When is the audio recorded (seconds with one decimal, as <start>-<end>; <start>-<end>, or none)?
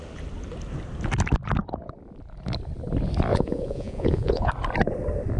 0.0-3.3; 4.5-5.4